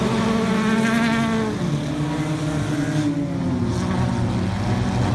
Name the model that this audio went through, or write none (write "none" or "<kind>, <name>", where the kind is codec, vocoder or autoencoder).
none